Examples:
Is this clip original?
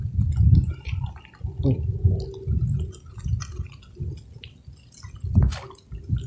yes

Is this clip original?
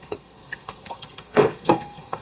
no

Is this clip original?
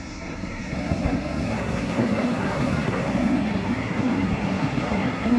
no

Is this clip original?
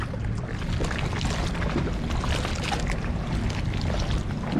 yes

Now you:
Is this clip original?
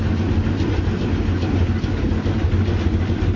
yes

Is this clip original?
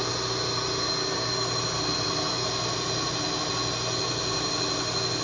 yes